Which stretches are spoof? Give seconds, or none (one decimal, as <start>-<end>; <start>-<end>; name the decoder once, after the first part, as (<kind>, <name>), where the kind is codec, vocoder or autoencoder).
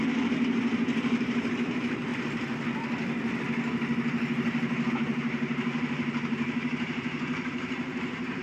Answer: 0.0-2.1 (vocoder, BigVGAN v2); 4.9-8.4